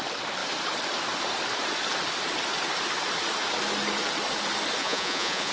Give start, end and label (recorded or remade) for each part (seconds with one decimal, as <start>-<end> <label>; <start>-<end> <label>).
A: 0.0-4.8 recorded; 4.8-5.5 remade